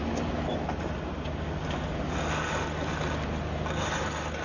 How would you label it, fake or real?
real